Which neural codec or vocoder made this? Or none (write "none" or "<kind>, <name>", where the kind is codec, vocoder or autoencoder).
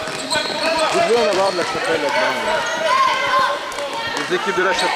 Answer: vocoder, BigVGAN v2